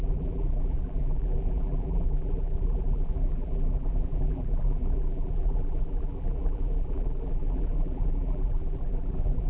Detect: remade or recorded remade